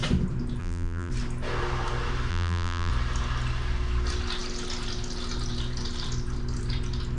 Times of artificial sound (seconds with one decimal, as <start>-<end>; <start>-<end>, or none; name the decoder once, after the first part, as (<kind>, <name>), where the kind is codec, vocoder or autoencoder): 0.6-1.1 (vocoder, BigVGAN v2); 2.3-2.9